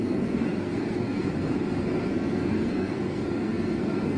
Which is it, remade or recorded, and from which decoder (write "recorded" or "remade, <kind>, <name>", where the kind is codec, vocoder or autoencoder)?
remade, codec, SNAC